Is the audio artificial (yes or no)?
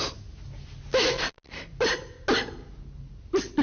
no